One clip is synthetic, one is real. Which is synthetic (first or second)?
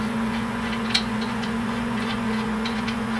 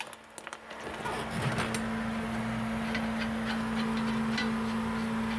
first